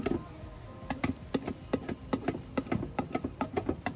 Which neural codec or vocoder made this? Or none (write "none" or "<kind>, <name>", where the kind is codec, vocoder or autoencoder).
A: none